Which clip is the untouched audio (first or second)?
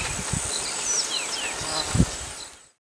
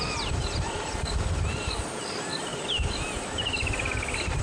first